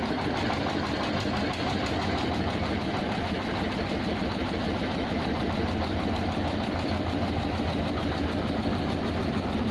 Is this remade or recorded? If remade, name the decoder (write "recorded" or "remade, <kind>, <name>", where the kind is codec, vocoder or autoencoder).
remade, vocoder, BigVGAN v2